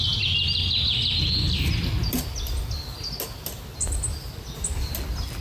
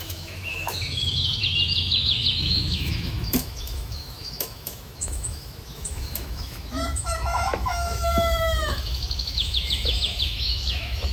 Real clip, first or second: first